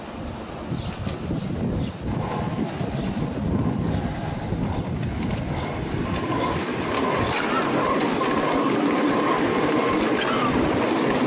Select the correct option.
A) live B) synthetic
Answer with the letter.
A